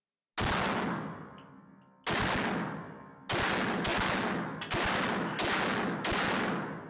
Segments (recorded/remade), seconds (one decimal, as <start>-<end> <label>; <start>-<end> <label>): 0.0-6.9 recorded